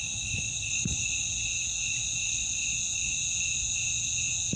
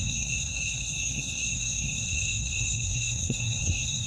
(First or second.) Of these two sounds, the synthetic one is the second